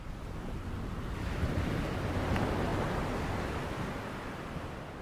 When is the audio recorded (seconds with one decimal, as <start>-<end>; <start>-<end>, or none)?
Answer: 0.0-5.0

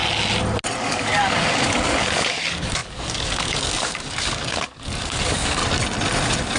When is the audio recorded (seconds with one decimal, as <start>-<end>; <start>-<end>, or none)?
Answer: 0.0-0.8; 5.6-6.6